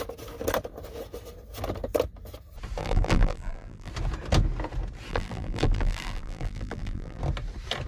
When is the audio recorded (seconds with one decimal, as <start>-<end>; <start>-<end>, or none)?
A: 0.0-2.8; 3.9-5.1; 7.2-7.9